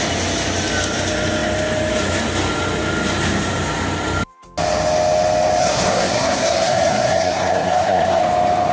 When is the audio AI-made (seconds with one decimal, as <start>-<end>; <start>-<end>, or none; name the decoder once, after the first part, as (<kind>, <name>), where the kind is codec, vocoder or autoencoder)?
5.6-8.2 (codec, SNAC)